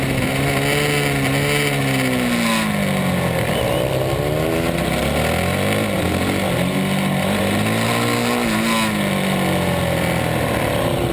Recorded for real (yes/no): yes